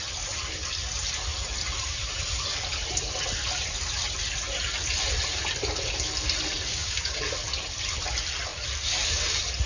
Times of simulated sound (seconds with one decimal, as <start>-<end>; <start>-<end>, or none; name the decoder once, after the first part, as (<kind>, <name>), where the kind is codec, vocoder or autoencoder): 6.7-7.2 (codec, DAC)